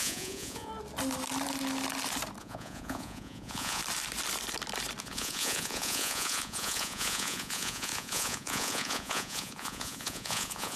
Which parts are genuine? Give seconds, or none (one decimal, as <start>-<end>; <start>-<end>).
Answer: 0.7-2.4; 3.8-5.0